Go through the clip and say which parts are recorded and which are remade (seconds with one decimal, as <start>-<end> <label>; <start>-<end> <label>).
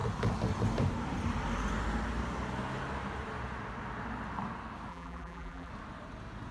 0.0-4.9 recorded; 4.9-5.7 remade; 5.7-6.5 recorded